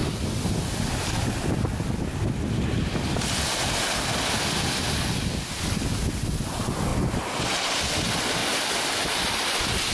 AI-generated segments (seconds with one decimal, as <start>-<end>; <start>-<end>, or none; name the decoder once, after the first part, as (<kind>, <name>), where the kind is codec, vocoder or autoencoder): none